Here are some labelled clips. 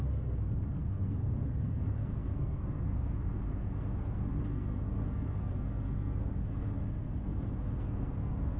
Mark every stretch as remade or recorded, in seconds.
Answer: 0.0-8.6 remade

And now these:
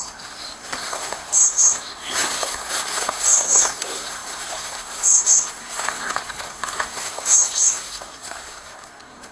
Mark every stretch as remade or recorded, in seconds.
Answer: 0.0-9.3 remade

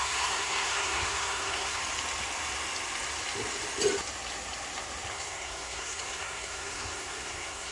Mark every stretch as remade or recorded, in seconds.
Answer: 0.0-1.8 remade; 1.8-5.1 recorded; 5.1-7.7 remade

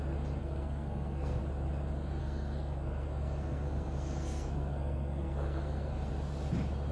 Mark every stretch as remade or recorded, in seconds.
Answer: 0.0-0.4 recorded; 0.4-1.4 remade; 1.4-2.2 recorded; 2.2-6.1 remade; 6.1-6.9 recorded

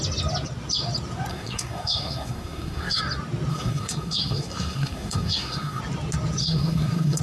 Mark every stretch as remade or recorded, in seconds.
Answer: 0.0-1.3 recorded; 1.3-3.0 remade; 3.0-3.5 recorded; 3.5-5.8 remade; 5.8-6.4 recorded; 6.4-7.2 remade

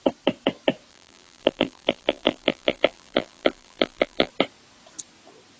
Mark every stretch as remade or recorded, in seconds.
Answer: 0.0-0.9 recorded; 0.9-4.3 remade; 4.3-5.6 recorded